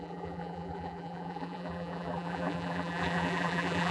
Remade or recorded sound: remade